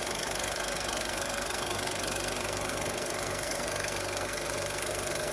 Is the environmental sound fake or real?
fake